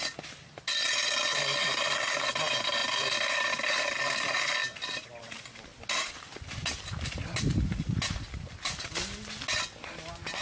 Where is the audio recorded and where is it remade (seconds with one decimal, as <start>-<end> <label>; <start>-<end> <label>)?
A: 0.0-10.4 recorded